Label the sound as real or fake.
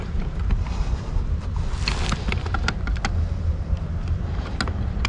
real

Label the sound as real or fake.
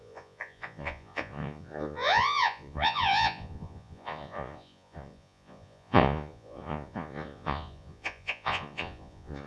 fake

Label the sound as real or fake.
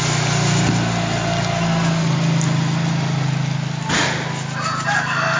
real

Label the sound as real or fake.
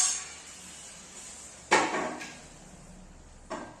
real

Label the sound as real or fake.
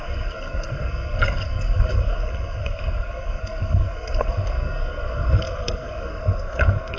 fake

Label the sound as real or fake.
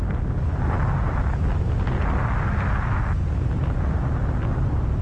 real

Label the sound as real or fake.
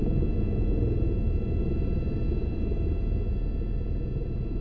real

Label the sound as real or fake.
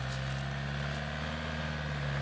real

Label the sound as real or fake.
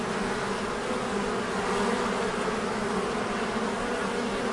real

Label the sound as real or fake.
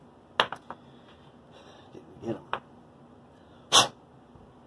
real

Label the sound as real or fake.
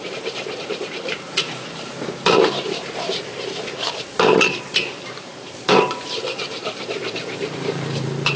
fake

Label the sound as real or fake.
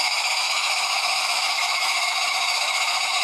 fake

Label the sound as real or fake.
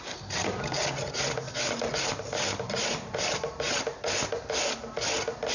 real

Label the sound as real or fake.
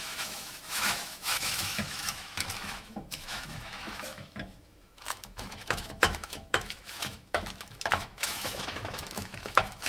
fake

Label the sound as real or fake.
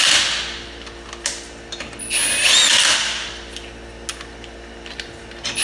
real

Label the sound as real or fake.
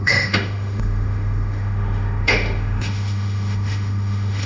fake